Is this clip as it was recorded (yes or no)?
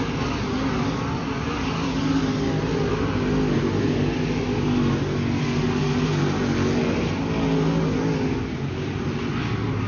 yes